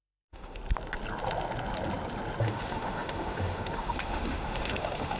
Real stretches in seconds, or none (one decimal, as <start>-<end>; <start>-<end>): 0.6-2.4